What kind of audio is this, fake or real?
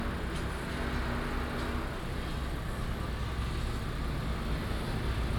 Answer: real